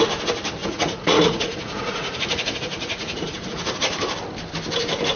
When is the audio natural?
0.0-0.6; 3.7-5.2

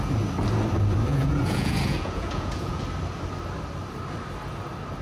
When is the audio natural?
0.0-1.1; 2.8-5.0

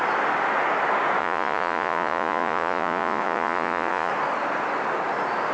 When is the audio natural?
0.0-1.2; 4.1-5.5

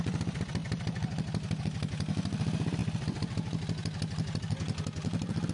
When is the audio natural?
0.0-5.5

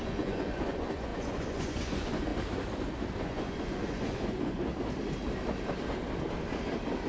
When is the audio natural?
2.3-3.2; 4.7-7.1

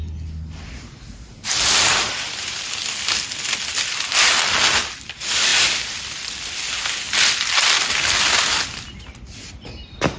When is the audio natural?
0.0-10.2

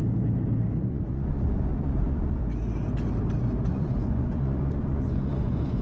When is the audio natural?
0.0-0.8; 2.4-3.7

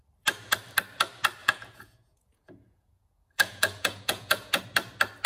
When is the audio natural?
0.0-1.4; 4.6-5.3